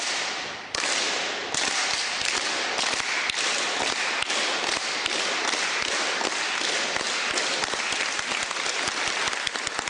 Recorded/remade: recorded